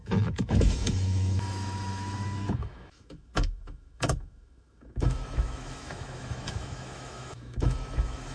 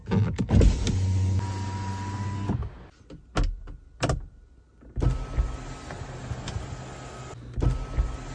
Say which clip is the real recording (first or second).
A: second